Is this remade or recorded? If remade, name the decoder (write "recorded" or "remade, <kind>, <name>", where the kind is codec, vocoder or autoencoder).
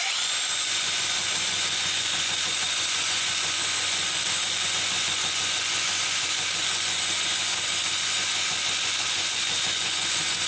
remade, vocoder, Vocos